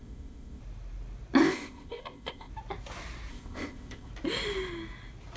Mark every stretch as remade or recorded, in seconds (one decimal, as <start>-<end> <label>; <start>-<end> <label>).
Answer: 0.0-0.6 remade; 0.6-1.4 recorded; 1.4-2.5 remade; 2.5-3.3 recorded; 3.3-4.1 remade; 4.1-5.4 recorded